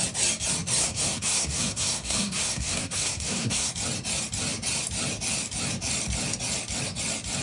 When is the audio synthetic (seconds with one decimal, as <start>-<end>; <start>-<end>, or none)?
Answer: 0.8-3.7